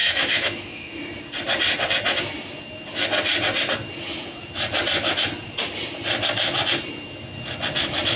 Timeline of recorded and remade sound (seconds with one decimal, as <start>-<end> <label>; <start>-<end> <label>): 0.0-0.9 remade; 0.9-8.2 recorded